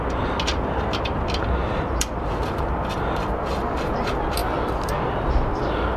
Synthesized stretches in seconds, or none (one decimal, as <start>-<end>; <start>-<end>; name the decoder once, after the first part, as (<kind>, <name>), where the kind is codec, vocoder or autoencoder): 1.6-2.8 (vocoder, BigVGAN v2)